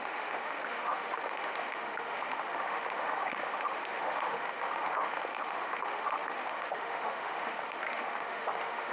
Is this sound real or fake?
fake